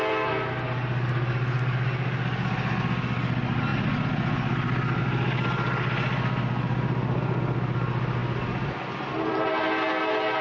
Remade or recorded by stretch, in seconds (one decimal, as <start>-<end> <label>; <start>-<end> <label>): 0.0-10.4 recorded